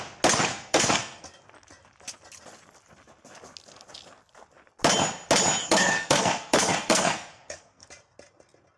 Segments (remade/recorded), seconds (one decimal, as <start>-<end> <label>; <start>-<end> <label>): 0.0-0.5 recorded; 0.5-1.2 remade; 1.2-5.6 recorded; 5.6-7.9 remade; 7.9-8.8 recorded